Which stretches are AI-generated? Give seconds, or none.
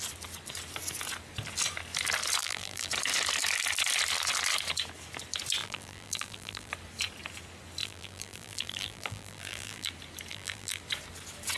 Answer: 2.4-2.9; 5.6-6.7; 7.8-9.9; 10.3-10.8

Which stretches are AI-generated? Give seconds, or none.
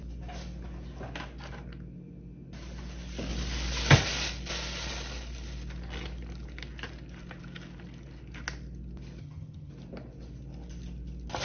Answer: 9.2-9.7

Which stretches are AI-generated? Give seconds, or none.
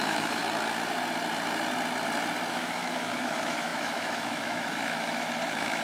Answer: 0.0-0.4; 2.5-5.8